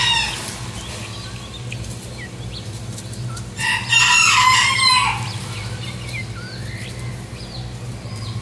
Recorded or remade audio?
recorded